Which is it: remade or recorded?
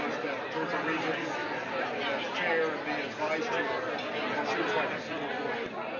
recorded